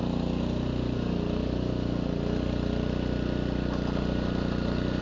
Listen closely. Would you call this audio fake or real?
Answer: real